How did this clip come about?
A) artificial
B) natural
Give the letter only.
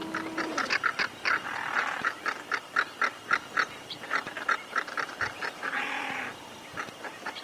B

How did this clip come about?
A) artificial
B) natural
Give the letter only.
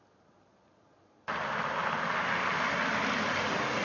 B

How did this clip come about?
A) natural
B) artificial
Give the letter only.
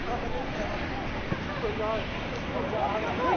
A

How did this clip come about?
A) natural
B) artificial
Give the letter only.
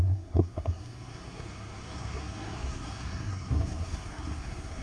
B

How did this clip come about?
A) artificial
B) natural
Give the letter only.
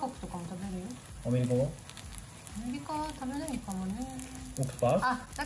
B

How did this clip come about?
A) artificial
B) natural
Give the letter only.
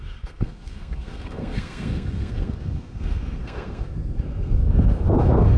A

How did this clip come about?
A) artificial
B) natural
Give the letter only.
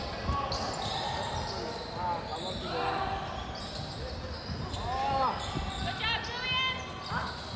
B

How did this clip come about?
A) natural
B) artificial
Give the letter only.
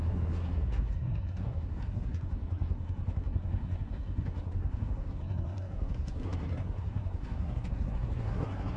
B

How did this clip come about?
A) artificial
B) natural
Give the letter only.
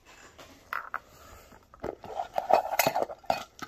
B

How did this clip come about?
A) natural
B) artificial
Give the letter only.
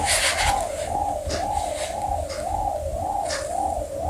A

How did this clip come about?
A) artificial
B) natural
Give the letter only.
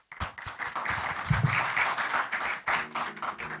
B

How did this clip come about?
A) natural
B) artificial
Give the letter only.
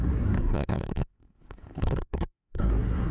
B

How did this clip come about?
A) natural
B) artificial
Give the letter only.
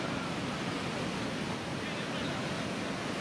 A